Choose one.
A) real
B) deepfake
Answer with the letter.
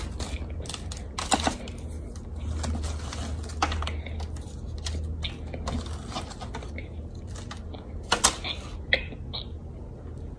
A